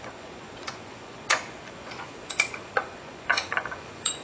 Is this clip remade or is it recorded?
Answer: remade